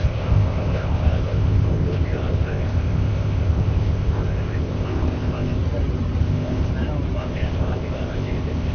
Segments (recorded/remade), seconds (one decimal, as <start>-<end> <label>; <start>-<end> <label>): 0.0-5.6 remade; 5.6-6.2 recorded; 6.2-6.7 remade; 6.7-7.2 recorded; 7.2-8.7 remade